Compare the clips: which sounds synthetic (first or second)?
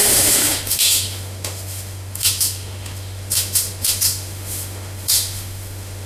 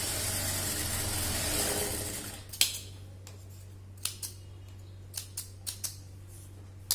first